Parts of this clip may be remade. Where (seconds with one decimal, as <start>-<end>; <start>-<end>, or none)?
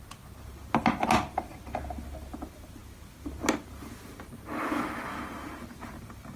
none